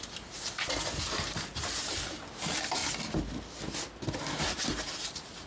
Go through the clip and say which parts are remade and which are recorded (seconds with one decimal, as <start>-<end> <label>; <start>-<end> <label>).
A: 0.0-2.8 remade; 2.8-4.4 recorded; 4.4-5.5 remade